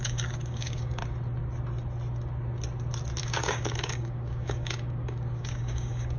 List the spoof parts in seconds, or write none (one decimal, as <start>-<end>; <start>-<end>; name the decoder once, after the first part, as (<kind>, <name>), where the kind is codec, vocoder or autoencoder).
0.0-1.0 (codec, DAC); 3.2-6.2